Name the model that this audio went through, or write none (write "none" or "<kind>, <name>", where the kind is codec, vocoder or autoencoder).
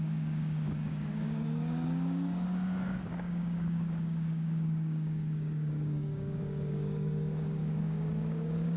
codec, DAC